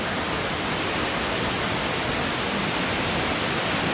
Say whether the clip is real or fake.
real